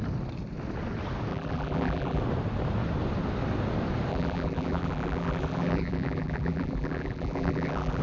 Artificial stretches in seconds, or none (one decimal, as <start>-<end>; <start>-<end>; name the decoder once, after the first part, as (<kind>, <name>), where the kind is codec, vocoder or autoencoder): 1.3-2.2 (vocoder, BigVGAN v2); 4.1-8.0